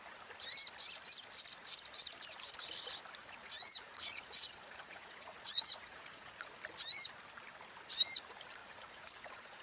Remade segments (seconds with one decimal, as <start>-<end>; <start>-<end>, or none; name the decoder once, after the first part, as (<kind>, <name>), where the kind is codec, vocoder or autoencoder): 3.2-6.5 (vocoder, Vocos); 8.6-9.6